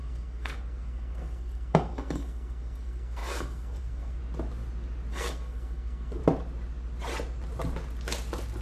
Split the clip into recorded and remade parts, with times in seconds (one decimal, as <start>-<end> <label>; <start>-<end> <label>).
0.0-4.2 remade; 4.2-5.1 recorded; 5.1-6.2 remade; 6.2-8.6 recorded